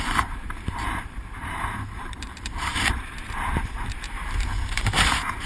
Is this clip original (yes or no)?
no